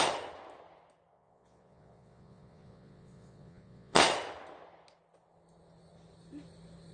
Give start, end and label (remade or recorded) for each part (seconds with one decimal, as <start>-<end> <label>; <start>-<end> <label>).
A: 0.0-1.1 recorded; 1.1-4.0 remade; 4.0-6.9 recorded